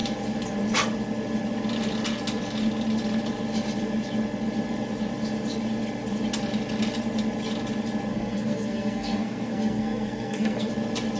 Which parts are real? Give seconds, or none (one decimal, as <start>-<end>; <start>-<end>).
0.0-8.1; 10.7-11.2